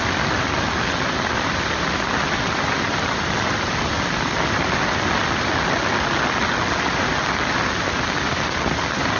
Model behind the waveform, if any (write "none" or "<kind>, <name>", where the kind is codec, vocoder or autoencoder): none